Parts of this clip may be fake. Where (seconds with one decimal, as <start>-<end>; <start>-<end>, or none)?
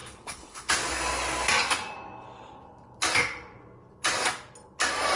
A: 0.0-0.7